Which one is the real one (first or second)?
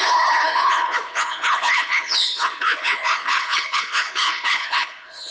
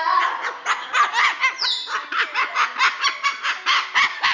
second